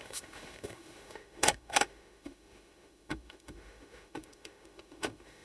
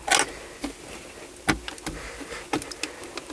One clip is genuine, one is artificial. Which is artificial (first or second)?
first